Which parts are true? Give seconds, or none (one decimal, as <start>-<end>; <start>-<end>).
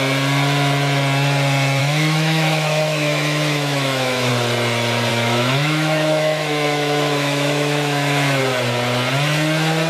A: 0.0-1.8; 4.3-5.1; 8.4-9.9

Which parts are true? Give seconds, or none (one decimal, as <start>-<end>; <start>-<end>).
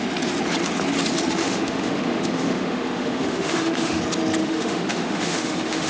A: 0.0-1.4; 4.0-4.4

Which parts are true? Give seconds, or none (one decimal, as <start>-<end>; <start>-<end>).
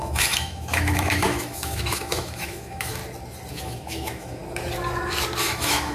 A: 3.0-3.5; 4.4-5.4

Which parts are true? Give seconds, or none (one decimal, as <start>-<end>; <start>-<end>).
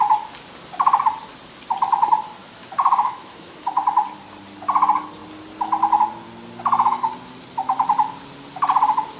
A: 0.0-2.4; 3.7-9.2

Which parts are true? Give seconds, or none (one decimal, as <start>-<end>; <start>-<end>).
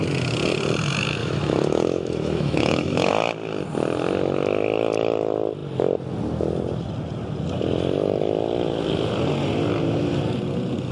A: 0.0-1.2; 3.1-10.9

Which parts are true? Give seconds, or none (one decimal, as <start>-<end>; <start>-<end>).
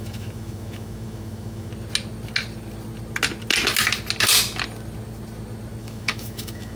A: 1.7-5.8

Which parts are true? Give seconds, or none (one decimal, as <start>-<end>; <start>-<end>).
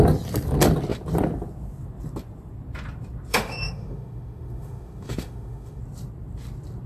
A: 0.0-3.3; 5.8-6.9